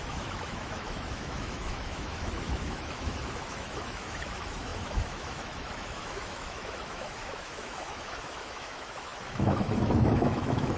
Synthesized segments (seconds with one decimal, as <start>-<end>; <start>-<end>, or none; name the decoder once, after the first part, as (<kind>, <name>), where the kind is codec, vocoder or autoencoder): 0.0-10.8 (autoencoder, DAC-VAE)